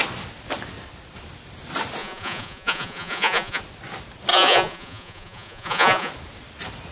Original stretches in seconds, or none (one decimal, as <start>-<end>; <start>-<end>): 0.0-2.0; 3.6-4.3; 6.1-6.9